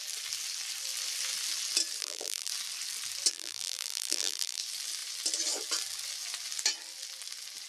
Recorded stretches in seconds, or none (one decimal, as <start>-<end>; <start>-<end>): 0.0-2.0; 2.5-3.3; 4.6-7.7

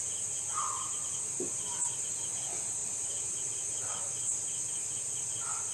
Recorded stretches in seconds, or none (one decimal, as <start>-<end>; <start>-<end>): 0.0-5.7

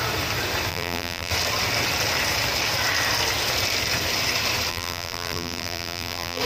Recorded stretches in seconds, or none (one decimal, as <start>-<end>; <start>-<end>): 0.0-0.7; 1.3-4.7